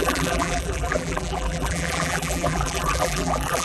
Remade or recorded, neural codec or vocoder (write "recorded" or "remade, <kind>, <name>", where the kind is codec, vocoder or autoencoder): remade, vocoder, BigVGAN v2